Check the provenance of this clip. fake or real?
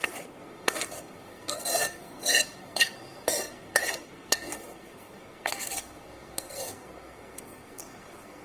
fake